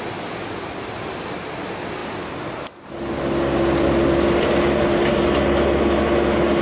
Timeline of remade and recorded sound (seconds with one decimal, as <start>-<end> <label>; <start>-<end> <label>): 0.0-6.6 recorded